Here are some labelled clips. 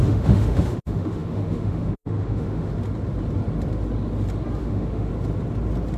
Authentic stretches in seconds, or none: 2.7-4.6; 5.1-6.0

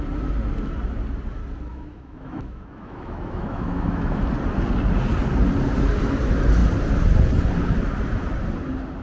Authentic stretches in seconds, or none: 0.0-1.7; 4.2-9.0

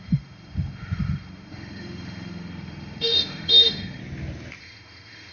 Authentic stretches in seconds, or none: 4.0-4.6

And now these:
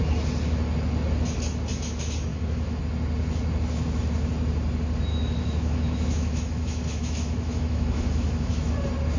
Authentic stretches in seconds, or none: 0.0-2.3; 2.8-5.1; 8.7-9.2